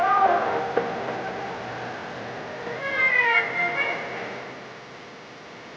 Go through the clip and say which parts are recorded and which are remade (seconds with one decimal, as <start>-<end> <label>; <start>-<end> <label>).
0.0-5.8 recorded